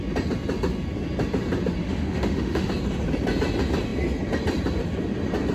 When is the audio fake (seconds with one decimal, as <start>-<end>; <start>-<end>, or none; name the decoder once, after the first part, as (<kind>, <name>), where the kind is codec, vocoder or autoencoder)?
1.8-2.7 (autoencoder, DAC-VAE)